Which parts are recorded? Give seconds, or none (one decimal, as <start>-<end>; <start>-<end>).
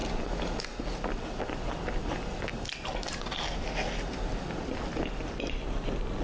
0.0-6.2